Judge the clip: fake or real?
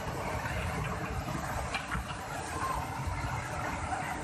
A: real